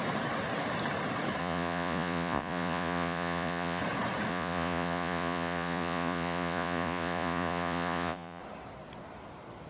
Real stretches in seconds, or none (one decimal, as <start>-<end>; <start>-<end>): 0.0-1.4; 3.8-4.3; 8.4-9.7